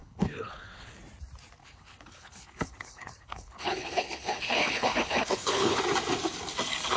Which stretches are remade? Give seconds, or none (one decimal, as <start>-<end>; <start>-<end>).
0.0-1.0; 1.6-5.8